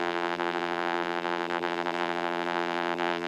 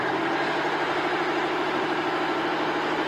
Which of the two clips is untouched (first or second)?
second